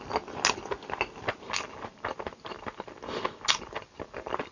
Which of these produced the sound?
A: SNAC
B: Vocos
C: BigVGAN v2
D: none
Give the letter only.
D